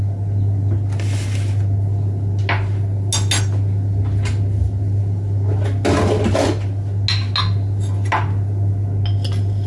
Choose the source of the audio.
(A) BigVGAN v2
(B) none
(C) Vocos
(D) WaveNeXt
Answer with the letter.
B